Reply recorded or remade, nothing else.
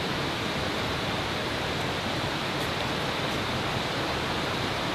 remade